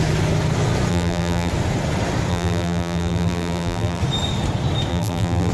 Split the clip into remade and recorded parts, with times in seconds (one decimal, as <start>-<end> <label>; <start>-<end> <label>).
0.0-0.9 recorded; 0.9-1.5 remade; 1.5-2.3 recorded; 2.3-4.0 remade; 4.0-4.9 recorded; 4.9-5.5 remade